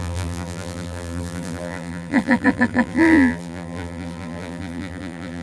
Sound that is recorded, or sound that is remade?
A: remade